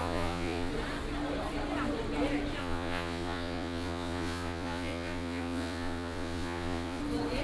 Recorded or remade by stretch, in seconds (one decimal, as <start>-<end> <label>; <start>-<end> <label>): 0.0-0.7 remade; 0.7-2.6 recorded; 2.6-7.0 remade; 7.0-7.4 recorded